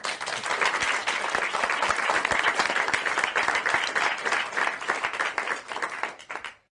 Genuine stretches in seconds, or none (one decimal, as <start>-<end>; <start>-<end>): 0.0-6.7